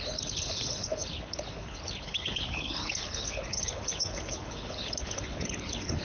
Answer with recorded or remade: remade